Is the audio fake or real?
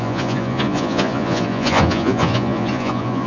fake